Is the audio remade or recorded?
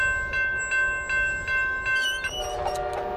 recorded